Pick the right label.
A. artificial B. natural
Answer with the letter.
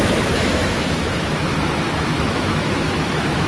A